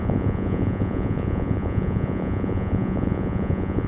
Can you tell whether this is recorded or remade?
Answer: remade